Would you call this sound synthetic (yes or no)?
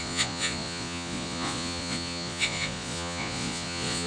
yes